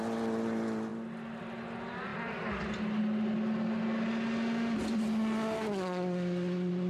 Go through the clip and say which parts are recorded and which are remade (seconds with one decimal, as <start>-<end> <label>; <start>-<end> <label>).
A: 0.0-6.9 recorded